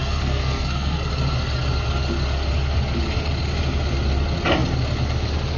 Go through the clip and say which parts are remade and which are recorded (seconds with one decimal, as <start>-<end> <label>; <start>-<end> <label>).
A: 0.0-1.1 remade; 1.1-5.6 recorded